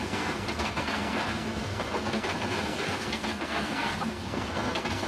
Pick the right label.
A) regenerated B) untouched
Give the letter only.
A